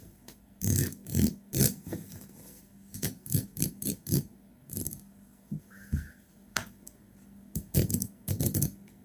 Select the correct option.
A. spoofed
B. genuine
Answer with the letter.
A